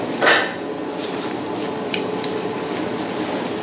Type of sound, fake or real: real